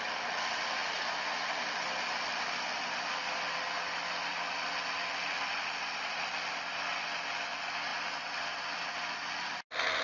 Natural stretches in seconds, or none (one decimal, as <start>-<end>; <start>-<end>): 0.0-10.0